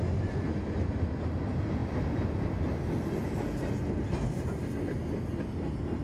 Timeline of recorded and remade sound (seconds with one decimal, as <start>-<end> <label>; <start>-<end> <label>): 0.0-6.0 recorded